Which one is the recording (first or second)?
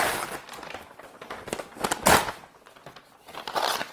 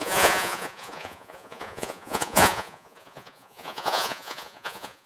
first